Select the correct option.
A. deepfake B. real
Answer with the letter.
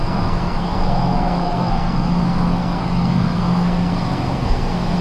A